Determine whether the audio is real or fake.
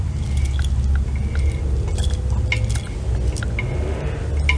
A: real